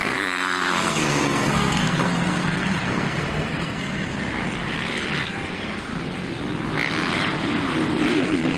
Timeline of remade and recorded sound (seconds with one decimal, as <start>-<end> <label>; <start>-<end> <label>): 0.0-4.4 remade; 4.4-5.3 recorded; 5.3-5.9 remade; 5.9-8.1 recorded; 8.1-8.6 remade